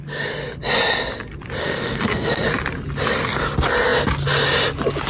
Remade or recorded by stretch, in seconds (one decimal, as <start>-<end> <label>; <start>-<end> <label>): 0.0-1.6 recorded; 1.6-2.4 remade; 2.4-5.1 recorded

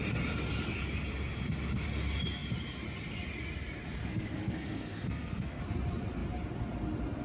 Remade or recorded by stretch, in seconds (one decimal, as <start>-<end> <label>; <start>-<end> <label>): 0.0-4.1 recorded; 4.1-5.6 remade; 5.6-7.2 recorded

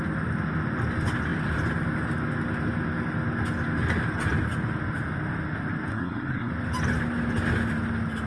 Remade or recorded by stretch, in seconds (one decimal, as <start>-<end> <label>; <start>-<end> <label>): 0.0-5.9 recorded; 5.9-6.5 remade; 6.5-8.3 recorded

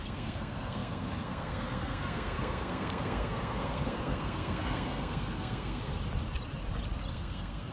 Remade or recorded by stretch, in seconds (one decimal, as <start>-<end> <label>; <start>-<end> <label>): 0.0-5.9 remade; 5.9-7.1 recorded; 7.1-7.7 remade

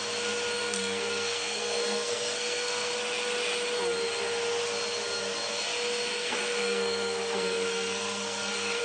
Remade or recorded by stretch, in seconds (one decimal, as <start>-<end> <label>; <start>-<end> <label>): 0.0-0.6 recorded; 0.6-2.9 remade; 2.9-6.1 recorded; 6.1-8.8 remade